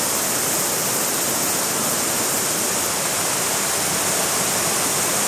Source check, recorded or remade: recorded